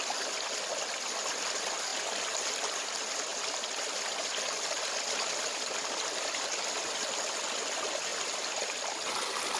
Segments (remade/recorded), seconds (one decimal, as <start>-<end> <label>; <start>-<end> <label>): 0.0-9.6 recorded